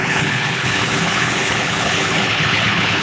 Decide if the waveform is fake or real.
fake